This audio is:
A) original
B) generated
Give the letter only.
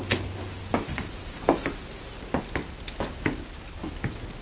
A